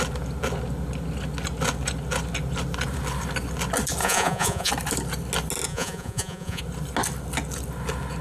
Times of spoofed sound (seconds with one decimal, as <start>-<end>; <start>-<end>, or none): 4.0-4.7; 5.7-6.6